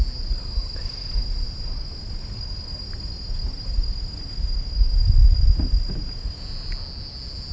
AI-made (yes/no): no